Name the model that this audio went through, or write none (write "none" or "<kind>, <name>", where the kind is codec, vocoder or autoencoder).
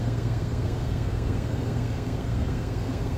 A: codec, SNAC